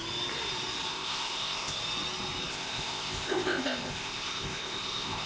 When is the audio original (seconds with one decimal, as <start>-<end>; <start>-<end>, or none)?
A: 0.0-0.9; 1.8-2.5